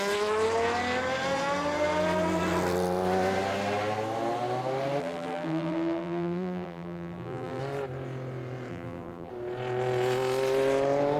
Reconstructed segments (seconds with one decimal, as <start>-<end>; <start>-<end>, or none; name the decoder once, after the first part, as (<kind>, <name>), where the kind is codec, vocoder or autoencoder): 5.0-7.6 (vocoder, BigVGAN v2); 8.7-9.3